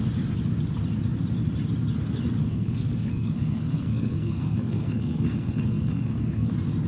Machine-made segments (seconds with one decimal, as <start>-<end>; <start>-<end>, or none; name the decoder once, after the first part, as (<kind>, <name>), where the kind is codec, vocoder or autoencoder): 2.4-6.5 (codec, SNAC)